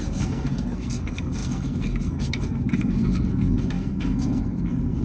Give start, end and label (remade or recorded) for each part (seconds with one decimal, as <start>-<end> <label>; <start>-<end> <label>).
0.0-5.0 remade